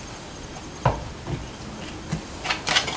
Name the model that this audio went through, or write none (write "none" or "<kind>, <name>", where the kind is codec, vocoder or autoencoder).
none